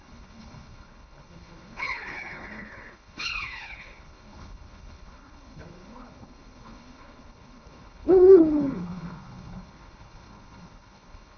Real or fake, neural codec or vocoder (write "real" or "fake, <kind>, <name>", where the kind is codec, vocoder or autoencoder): fake, codec, HILCodec